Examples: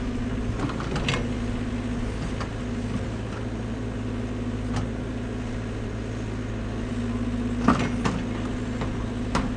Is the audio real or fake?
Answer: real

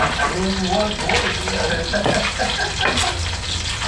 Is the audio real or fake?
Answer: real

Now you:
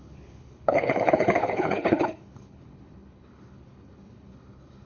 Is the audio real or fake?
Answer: fake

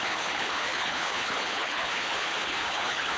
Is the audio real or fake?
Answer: fake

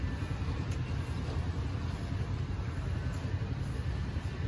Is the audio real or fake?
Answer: real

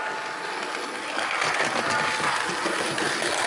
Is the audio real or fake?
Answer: real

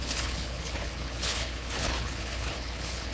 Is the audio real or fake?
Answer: fake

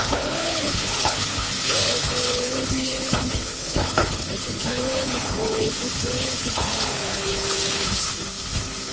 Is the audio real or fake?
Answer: fake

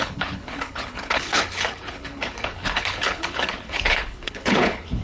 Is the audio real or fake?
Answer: fake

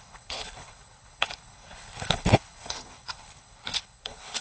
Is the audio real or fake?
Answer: fake